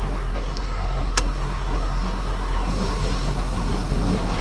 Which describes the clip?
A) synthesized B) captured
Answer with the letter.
A